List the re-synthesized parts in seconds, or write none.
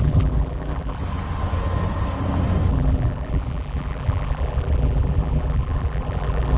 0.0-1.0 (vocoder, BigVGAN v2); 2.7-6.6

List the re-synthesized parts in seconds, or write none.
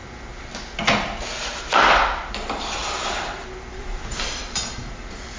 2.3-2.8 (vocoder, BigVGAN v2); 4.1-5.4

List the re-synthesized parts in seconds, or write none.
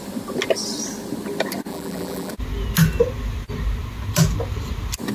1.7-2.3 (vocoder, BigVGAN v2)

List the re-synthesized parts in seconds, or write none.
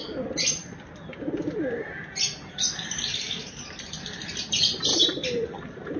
0.0-3.4 (vocoder, BigVGAN v2); 4.0-6.0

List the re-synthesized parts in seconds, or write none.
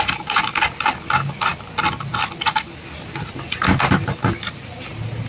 none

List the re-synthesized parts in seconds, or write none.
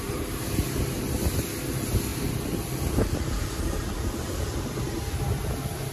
2.1-4.4 (vocoder, BigVGAN v2)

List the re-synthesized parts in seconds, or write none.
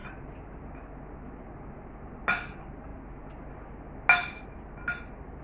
none